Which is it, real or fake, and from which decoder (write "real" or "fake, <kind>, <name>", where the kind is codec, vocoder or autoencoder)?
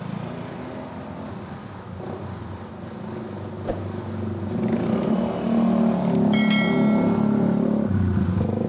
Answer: real